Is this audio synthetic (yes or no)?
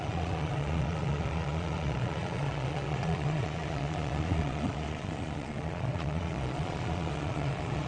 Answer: yes